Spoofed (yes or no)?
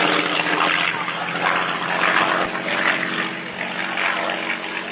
no